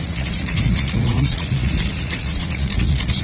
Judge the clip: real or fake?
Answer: fake